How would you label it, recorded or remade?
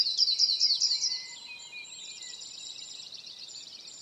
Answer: remade